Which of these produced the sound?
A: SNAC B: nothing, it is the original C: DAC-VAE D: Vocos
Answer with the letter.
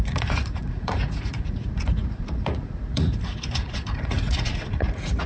D